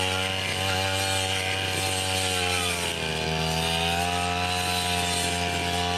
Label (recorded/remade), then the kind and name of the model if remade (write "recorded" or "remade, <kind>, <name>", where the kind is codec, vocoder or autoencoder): recorded